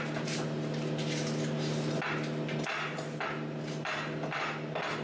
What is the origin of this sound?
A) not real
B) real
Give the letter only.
B